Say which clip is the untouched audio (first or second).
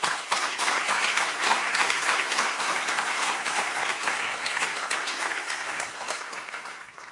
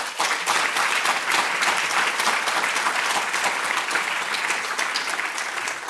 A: second